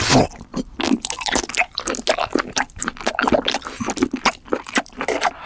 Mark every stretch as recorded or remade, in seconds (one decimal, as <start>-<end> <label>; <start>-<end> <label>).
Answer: 0.0-5.5 recorded

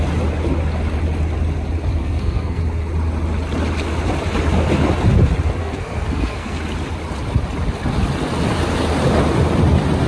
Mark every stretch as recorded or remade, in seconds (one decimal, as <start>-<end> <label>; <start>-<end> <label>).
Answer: 0.0-2.0 recorded; 2.0-2.6 remade; 2.6-5.6 recorded; 5.6-6.6 remade; 6.6-10.1 recorded

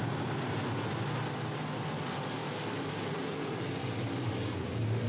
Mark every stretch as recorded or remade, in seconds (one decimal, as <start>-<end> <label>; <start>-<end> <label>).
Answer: 0.0-5.1 recorded

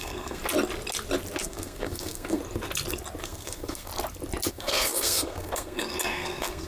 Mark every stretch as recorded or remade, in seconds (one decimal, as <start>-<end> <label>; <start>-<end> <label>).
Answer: 0.0-0.4 remade; 0.4-1.4 recorded; 1.4-2.4 remade; 2.4-3.2 recorded; 3.2-3.9 remade; 3.9-4.5 recorded; 4.5-6.7 remade

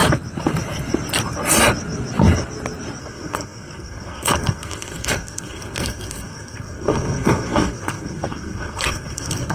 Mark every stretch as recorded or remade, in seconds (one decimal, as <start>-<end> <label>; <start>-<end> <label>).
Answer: 0.0-3.0 recorded; 3.0-9.5 remade

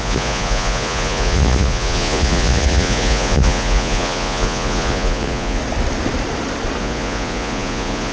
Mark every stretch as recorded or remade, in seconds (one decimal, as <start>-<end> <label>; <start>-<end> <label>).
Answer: 0.0-5.6 remade; 5.6-6.8 recorded; 6.8-8.1 remade